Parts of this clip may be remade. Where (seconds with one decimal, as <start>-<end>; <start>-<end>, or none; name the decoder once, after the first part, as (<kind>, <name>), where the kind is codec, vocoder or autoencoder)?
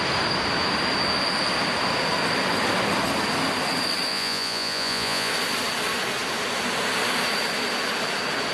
4.1-5.3 (vocoder, Vocos)